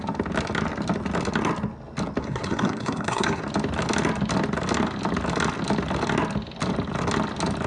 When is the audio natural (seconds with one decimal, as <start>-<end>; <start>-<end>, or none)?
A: 0.0-2.2; 3.4-7.7